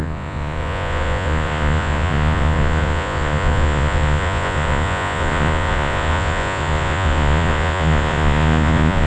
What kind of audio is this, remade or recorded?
remade